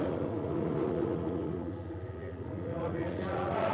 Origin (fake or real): fake